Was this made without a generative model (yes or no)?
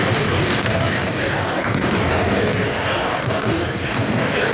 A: no